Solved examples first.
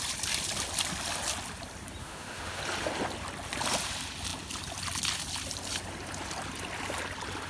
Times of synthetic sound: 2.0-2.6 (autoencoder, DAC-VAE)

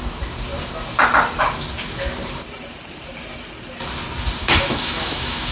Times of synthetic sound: 4.4-5.5 (autoencoder, DAC-VAE)